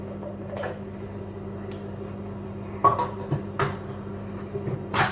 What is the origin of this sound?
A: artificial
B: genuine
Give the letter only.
B